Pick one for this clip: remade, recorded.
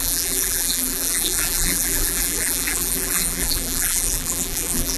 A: remade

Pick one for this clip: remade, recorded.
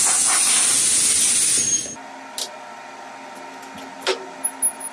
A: recorded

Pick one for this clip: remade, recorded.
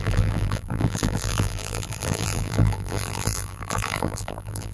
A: remade